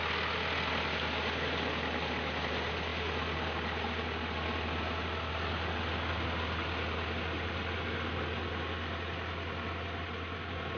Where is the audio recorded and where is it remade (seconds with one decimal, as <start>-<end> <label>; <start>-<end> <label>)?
0.0-10.8 recorded